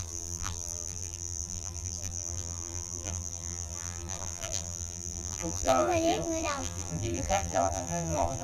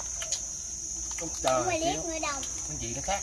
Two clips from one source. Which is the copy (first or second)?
first